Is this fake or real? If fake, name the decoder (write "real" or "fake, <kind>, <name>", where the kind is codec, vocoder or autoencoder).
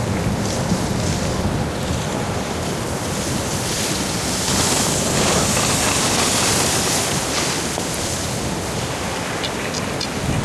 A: real